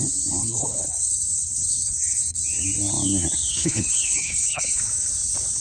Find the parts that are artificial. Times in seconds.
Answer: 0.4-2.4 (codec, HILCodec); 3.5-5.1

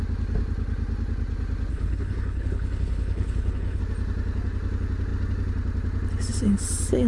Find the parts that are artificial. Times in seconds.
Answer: 1.7-3.8 (codec, HILCodec)

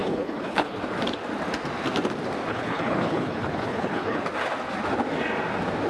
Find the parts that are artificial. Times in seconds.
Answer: 0.0-0.8 (codec, HILCodec); 2.5-4.2